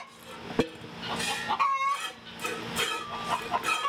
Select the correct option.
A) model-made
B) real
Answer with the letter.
B